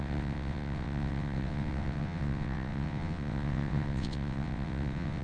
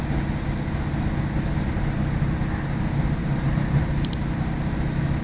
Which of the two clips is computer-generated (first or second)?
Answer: first